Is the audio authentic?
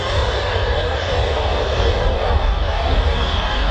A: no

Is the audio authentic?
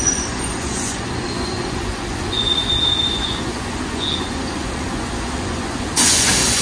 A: no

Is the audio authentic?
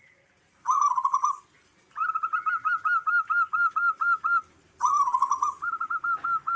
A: yes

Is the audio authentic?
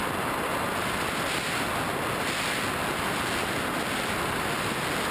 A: yes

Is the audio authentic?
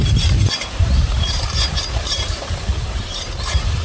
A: no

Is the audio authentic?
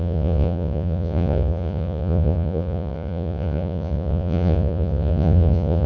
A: no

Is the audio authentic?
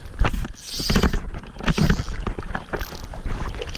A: yes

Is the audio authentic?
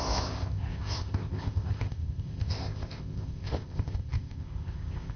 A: no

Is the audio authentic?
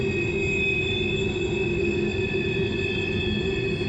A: yes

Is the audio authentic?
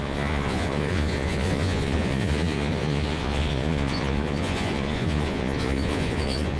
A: no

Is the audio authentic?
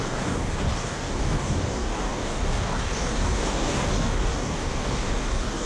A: no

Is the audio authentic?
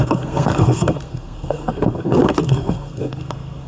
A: no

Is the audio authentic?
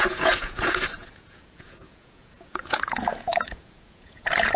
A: no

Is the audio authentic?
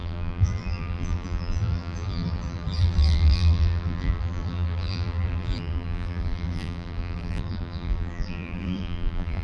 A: no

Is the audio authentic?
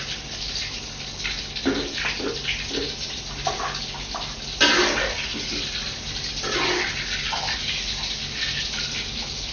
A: yes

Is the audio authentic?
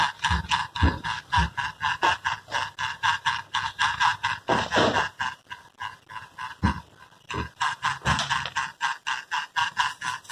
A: no